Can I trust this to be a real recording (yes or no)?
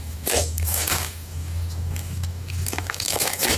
no